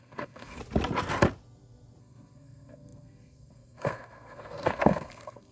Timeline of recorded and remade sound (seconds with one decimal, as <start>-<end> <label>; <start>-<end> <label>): 0.0-0.6 remade; 0.6-2.0 recorded; 2.0-5.5 remade